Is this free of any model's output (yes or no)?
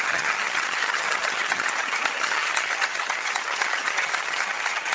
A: no